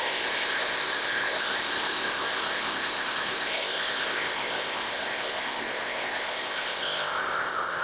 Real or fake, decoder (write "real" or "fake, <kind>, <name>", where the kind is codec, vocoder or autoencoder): fake, codec, ZipCodec